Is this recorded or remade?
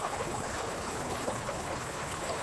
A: remade